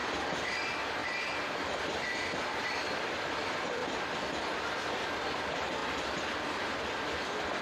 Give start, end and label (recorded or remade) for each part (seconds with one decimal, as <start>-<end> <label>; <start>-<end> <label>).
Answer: 0.0-0.6 remade; 0.6-1.0 recorded; 1.0-3.1 remade; 3.1-7.6 recorded